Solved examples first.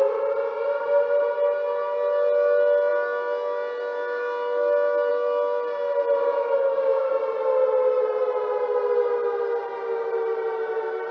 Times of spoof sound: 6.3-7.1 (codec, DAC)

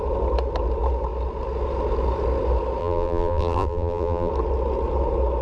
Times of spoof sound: 2.8-4.3 (vocoder, BigVGAN v2)

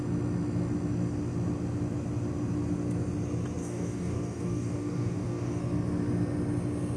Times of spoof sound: 3.6-5.6 (codec, DAC)

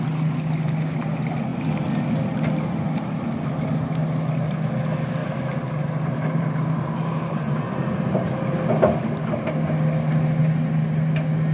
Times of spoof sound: 5.2-8.7 (vocoder, BigVGAN v2)

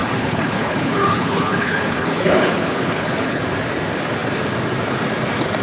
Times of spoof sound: 0.0-3.4 (codec, HILCodec)

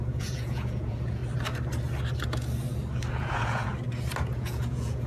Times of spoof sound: 0.0-1.2 (vocoder, Vocos); 3.1-3.7; 4.2-5.1

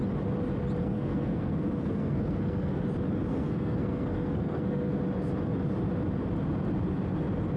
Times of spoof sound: 0.8-2.8 (codec, SNAC); 3.3-5.0

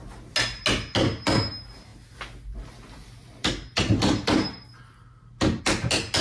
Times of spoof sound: none